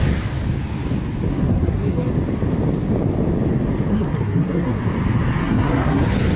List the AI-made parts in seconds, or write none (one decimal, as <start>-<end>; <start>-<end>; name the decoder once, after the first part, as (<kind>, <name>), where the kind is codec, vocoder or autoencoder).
1.3-2.1 (codec, SNAC); 3.9-4.8; 5.4-6.0

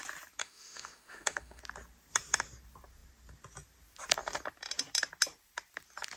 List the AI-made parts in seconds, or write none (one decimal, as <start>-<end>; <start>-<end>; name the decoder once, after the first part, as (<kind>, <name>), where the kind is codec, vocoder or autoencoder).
0.4-1.6 (autoencoder, DAC-VAE)

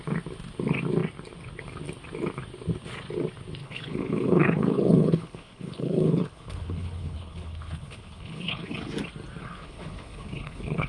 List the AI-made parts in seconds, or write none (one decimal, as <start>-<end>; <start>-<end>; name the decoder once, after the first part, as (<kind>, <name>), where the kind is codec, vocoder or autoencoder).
3.6-8.7 (codec, HILCodec); 9.4-10.9